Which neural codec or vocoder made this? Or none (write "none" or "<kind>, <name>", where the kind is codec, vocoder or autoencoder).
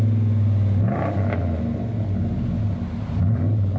none